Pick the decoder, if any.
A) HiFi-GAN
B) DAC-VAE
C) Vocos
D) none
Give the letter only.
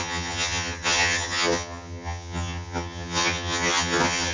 A